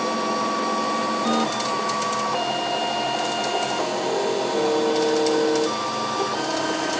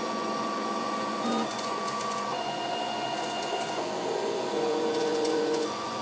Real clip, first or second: first